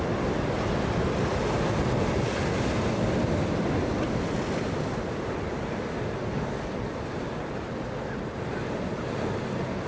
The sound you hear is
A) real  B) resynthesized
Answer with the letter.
A